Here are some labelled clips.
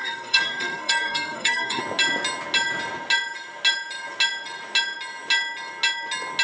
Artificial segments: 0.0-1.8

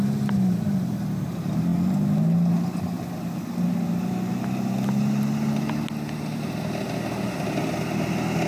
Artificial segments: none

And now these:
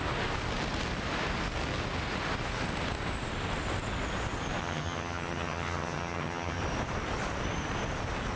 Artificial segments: 4.6-6.6

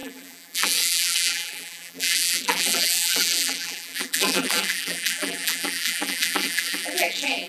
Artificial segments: 0.0-7.5